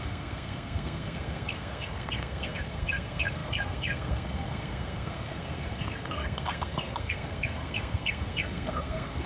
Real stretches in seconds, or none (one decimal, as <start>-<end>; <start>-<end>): none